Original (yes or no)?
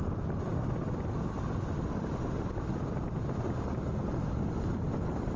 yes